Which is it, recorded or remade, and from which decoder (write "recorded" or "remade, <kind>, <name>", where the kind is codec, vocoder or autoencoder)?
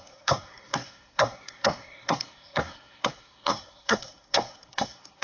remade, codec, SNAC